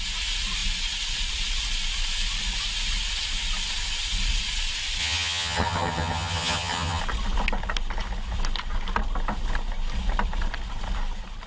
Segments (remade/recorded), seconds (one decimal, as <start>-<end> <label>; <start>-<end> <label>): 0.0-5.0 recorded; 5.0-7.0 remade; 7.0-11.5 recorded

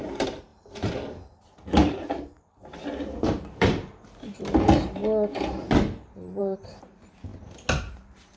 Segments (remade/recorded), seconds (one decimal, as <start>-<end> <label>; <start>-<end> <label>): 0.0-5.0 remade; 5.0-6.4 recorded; 6.4-7.3 remade; 7.3-7.8 recorded; 7.8-8.4 remade